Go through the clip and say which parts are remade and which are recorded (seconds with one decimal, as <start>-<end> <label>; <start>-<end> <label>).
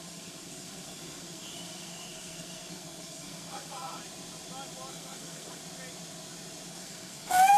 0.0-4.0 remade; 4.0-4.9 recorded; 4.9-5.6 remade; 5.6-6.7 recorded; 6.7-7.6 remade